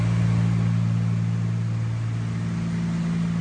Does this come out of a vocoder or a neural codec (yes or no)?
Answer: no